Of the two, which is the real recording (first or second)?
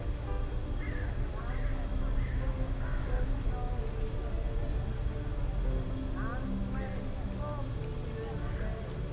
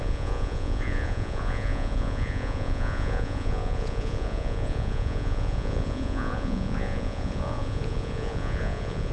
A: first